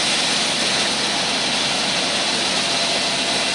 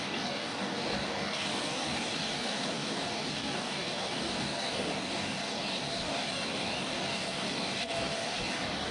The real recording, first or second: first